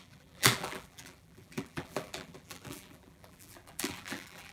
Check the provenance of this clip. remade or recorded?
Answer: remade